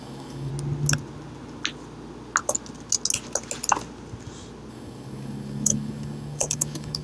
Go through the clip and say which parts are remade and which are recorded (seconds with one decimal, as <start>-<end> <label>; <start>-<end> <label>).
0.0-0.5 remade; 0.5-4.7 recorded; 4.7-7.0 remade